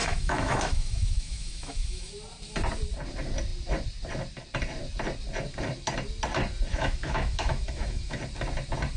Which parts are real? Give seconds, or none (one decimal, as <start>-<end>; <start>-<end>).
2.1-6.7; 8.2-9.0